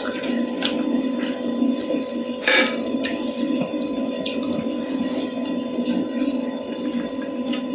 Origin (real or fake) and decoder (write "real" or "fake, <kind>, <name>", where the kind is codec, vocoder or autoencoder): fake, vocoder, BigVGAN v2